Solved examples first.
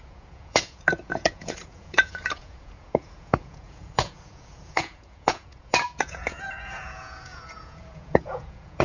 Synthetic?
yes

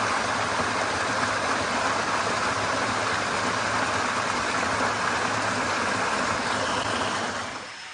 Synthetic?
no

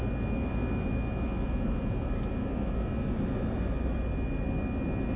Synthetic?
no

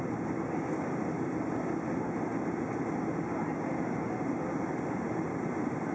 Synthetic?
no